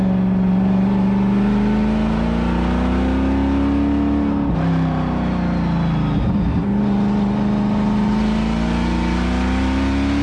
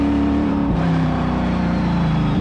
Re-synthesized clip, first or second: second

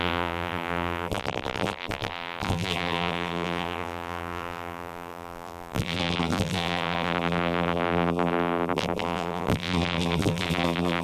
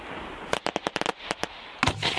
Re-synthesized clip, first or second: first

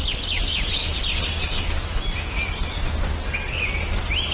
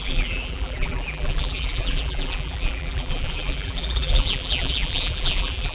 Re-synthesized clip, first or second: second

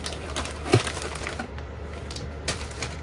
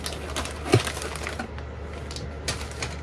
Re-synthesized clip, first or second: first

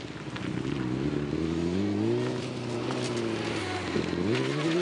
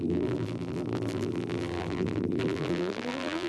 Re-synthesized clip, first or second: second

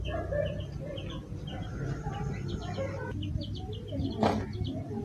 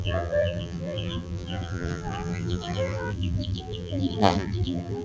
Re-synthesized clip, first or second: second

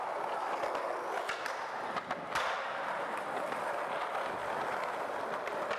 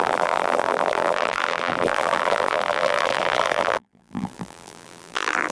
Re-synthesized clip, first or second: second